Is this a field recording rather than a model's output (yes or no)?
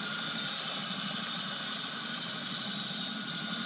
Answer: yes